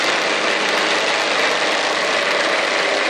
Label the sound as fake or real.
real